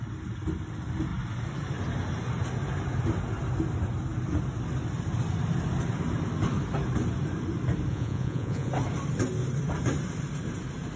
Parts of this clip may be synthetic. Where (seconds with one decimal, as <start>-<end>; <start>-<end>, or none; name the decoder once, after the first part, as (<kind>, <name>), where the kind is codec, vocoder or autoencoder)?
7.9-8.7 (vocoder, Vocos)